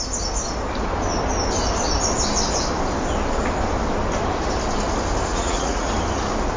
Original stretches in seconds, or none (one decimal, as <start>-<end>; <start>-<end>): 0.0-5.3; 5.9-6.6